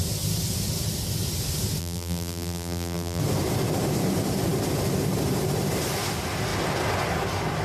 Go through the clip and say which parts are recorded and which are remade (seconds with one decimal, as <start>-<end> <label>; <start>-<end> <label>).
0.0-1.8 recorded; 1.8-3.2 remade; 3.2-7.6 recorded